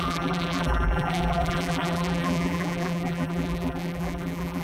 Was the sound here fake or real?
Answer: fake